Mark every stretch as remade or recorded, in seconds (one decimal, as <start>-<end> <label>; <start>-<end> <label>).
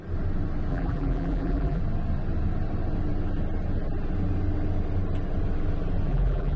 0.0-0.7 recorded; 0.7-1.8 remade; 1.8-6.1 recorded; 6.1-6.6 remade